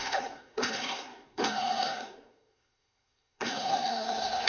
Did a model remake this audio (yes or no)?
yes